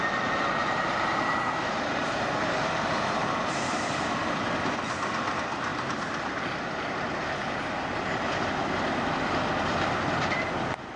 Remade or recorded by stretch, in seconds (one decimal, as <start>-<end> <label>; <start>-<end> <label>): 0.0-0.6 recorded; 0.6-3.6 remade; 3.6-7.4 recorded; 7.4-8.0 remade; 8.0-11.0 recorded